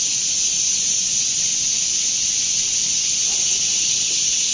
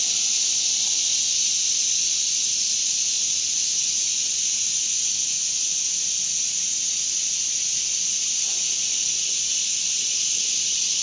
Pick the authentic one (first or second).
second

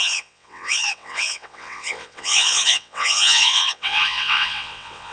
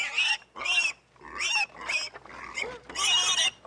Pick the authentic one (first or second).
second